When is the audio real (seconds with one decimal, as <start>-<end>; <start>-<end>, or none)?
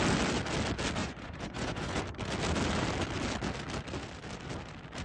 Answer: 0.0-1.0; 2.0-5.0